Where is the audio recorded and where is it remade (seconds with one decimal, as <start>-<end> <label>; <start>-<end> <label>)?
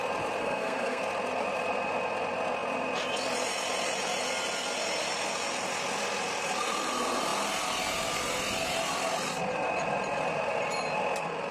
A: 0.0-0.4 recorded; 0.4-1.0 remade; 1.0-11.5 recorded